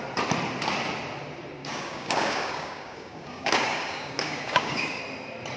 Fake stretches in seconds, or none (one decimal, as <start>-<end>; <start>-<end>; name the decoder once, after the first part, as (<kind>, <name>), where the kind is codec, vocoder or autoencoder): 1.6-5.0 (codec, DAC)